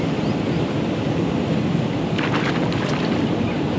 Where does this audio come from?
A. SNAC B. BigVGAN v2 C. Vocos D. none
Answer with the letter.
D